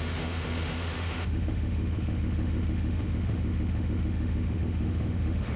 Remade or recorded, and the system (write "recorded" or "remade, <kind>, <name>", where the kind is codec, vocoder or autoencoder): remade, autoencoder, DAC-VAE